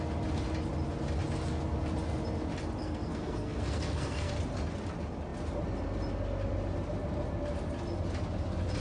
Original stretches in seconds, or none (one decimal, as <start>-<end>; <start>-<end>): 0.0-2.8; 4.3-8.8